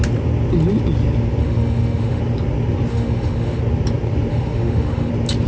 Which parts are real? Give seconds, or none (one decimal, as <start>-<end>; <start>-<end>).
0.0-1.4; 2.2-2.9; 3.6-4.3; 5.1-5.5